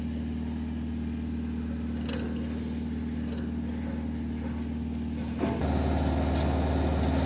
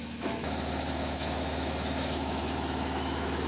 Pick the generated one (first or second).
second